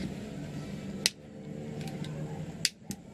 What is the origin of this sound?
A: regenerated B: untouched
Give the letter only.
B